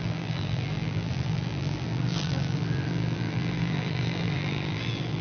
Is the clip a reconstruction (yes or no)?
yes